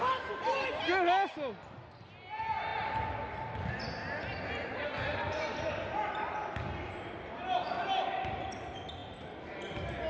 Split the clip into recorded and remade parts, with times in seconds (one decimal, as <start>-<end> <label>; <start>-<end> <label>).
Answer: 0.0-6.4 recorded; 6.4-8.3 remade; 8.3-9.0 recorded; 9.0-9.7 remade; 9.7-10.1 recorded

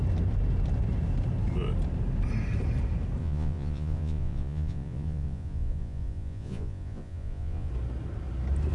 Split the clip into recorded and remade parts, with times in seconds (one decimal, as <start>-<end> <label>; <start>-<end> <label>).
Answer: 0.0-3.2 recorded; 3.2-7.7 remade; 7.7-8.7 recorded

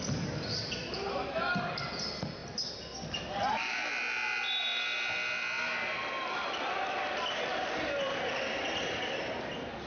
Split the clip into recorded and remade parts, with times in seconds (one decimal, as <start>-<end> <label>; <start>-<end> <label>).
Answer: 0.0-9.9 recorded

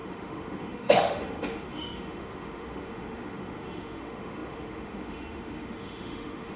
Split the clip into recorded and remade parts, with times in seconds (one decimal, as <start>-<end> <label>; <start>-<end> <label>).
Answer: 0.0-6.6 remade

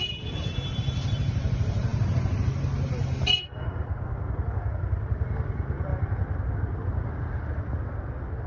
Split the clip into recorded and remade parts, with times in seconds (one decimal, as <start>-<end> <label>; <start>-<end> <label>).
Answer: 0.0-8.5 recorded

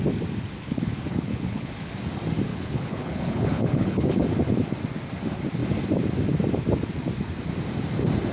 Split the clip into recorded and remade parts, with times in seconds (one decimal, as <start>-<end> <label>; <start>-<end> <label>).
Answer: 0.0-0.6 recorded; 0.6-1.9 remade; 1.9-2.5 recorded; 2.5-4.2 remade; 4.2-8.3 recorded

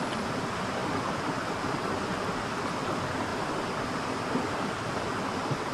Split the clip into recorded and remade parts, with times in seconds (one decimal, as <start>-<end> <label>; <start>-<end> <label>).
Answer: 0.0-5.7 recorded